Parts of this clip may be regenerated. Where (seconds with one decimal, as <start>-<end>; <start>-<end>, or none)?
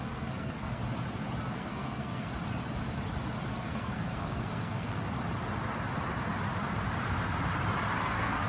0.0-0.8; 1.5-2.3; 3.5-5.0; 8.0-8.5